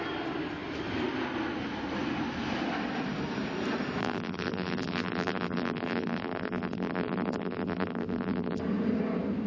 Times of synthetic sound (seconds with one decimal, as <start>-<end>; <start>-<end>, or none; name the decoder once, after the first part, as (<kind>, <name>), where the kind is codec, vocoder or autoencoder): 4.0-8.6 (vocoder, BigVGAN v2)